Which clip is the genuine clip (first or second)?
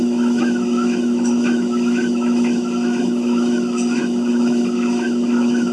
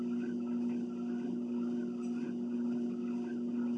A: second